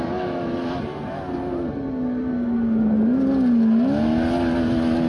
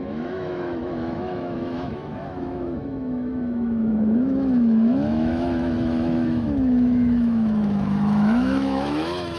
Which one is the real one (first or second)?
first